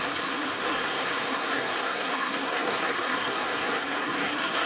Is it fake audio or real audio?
fake